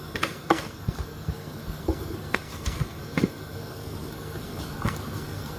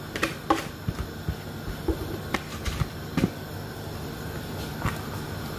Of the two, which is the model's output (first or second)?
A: first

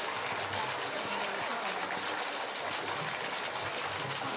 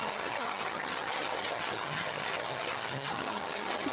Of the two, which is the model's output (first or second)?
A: second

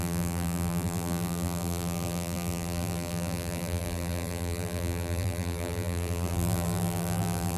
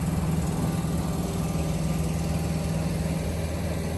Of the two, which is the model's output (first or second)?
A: first